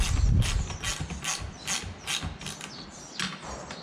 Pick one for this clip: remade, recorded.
recorded